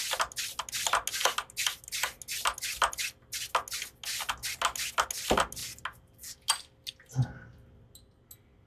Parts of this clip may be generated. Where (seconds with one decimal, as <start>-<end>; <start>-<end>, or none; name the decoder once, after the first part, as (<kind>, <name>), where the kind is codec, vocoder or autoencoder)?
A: none

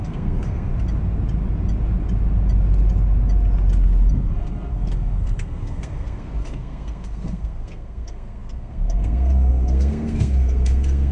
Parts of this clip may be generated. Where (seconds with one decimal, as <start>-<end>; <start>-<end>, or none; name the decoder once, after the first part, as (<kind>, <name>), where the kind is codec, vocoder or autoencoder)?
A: 0.0-0.7 (codec, SNAC); 4.1-11.1

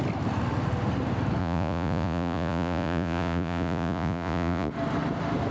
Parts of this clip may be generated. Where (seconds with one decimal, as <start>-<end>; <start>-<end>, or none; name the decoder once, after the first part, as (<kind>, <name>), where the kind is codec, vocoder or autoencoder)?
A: 1.4-4.7 (vocoder, Vocos)

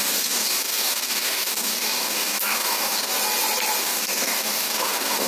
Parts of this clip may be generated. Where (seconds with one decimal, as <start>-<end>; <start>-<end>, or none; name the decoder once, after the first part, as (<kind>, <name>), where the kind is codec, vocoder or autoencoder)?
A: 0.0-3.1 (codec, DAC); 3.8-5.3

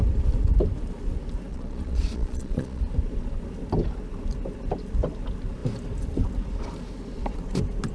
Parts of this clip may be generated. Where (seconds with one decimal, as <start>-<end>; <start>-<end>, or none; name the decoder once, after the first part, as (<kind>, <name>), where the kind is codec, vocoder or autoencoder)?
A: 1.5-2.8 (vocoder, Vocos)

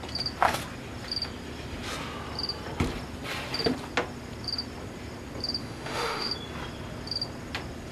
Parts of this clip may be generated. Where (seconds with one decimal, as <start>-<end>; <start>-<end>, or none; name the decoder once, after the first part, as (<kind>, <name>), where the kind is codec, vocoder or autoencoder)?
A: 5.6-6.3 (autoencoder, DAC-VAE)